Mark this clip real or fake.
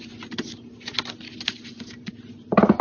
real